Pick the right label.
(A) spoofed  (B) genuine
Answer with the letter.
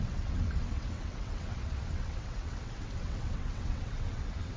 A